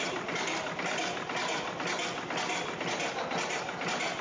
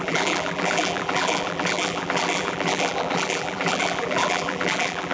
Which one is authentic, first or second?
first